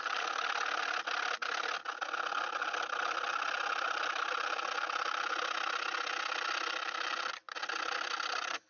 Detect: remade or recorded recorded